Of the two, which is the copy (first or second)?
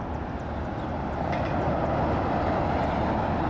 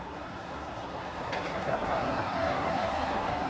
second